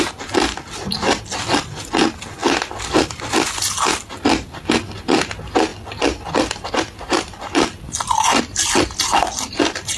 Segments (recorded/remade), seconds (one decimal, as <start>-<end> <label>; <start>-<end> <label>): 0.0-2.4 recorded; 2.4-3.3 remade; 3.3-10.0 recorded

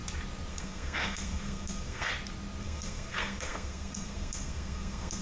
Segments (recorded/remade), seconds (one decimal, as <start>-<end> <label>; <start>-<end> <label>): 0.0-0.5 recorded; 0.5-2.1 remade; 2.1-2.6 recorded; 2.6-5.2 remade

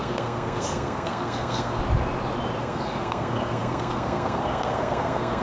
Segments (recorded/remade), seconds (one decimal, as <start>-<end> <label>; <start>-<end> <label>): 0.0-1.8 remade; 1.8-2.6 recorded; 2.6-5.4 remade

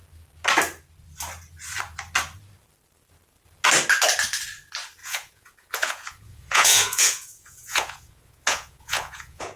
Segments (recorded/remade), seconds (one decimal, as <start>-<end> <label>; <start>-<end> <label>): 0.0-5.0 recorded; 5.0-9.6 remade

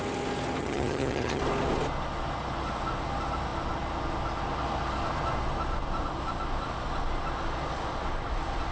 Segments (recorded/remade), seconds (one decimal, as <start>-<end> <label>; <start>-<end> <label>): 0.0-0.6 recorded; 0.6-1.4 remade; 1.4-8.7 recorded

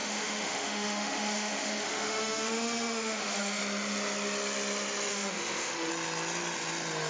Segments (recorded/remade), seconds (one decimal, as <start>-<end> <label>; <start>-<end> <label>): 0.0-3.6 remade; 3.6-5.1 recorded; 5.1-5.9 remade; 5.9-7.1 recorded

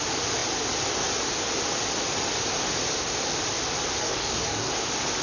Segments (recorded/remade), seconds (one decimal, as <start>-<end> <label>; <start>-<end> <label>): 0.0-4.0 recorded; 4.0-4.7 remade; 4.7-5.2 recorded